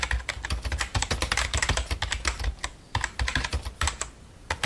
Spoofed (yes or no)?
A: no